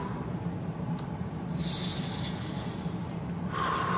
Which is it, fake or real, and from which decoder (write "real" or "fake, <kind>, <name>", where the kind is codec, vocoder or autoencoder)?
real